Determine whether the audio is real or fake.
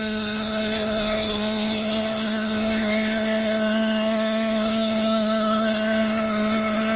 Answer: fake